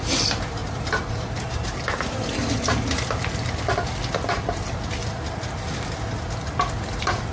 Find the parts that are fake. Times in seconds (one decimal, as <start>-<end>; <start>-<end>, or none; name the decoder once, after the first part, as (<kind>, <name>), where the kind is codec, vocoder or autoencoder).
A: none